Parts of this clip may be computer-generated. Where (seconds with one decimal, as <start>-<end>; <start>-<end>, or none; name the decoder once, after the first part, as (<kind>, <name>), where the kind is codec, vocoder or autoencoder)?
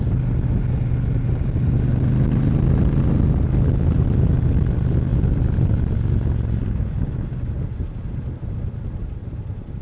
none